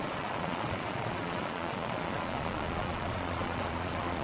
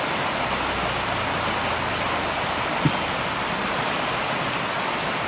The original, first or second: second